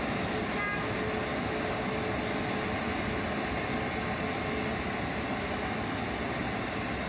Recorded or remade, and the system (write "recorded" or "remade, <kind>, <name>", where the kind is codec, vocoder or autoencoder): recorded